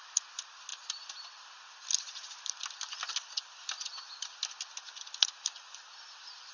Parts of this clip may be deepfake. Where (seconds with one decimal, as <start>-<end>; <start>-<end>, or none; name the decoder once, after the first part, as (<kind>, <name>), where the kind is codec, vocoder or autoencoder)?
none